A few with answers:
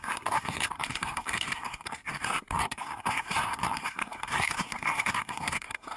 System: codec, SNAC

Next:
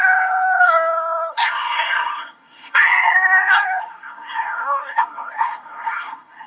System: codec, SNAC